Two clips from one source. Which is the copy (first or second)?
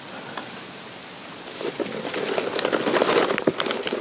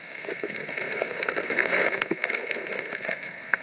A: second